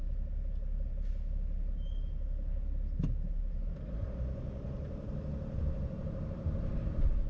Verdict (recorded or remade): recorded